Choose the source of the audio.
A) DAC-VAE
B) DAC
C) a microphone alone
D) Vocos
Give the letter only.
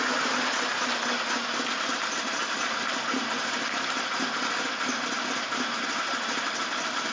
C